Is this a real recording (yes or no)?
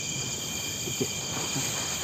yes